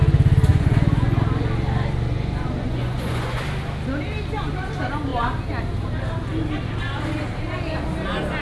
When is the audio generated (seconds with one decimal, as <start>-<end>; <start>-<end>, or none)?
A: 0.5-1.2; 2.1-3.4

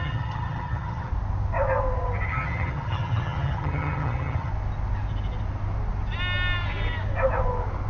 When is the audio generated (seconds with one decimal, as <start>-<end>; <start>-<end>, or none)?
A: 0.0-1.1; 2.3-4.5

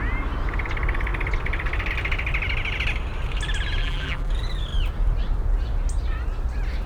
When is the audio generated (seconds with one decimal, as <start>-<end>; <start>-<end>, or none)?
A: 3.8-4.3

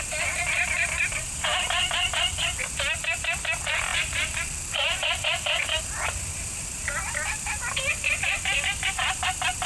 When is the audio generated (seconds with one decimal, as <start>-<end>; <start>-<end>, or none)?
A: 3.9-6.6

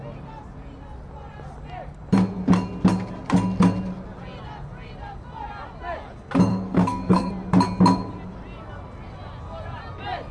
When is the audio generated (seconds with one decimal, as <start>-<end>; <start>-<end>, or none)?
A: 6.5-7.3

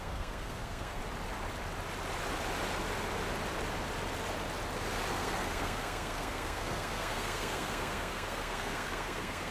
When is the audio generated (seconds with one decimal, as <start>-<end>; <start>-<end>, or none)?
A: 0.0-1.0; 5.1-9.5

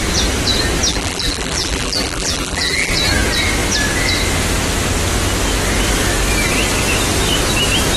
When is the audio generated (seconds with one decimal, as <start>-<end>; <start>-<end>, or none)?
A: 0.9-2.9